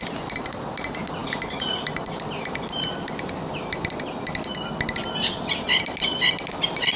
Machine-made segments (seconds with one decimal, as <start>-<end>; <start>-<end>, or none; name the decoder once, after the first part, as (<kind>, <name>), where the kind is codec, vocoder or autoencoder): none